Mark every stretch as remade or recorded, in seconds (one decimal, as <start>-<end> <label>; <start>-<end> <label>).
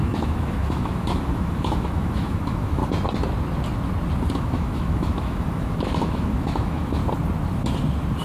0.0-2.8 remade; 2.8-4.3 recorded; 4.3-7.0 remade; 7.0-8.2 recorded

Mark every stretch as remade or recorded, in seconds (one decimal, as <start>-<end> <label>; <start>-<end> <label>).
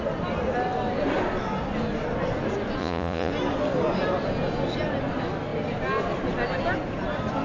0.0-2.8 recorded; 2.8-3.3 remade; 3.3-7.4 recorded